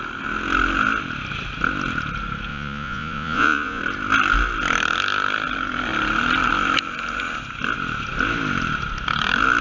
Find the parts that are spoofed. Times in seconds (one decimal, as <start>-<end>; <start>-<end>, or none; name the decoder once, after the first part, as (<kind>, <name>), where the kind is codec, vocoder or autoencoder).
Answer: 2.5-3.8 (vocoder, Vocos)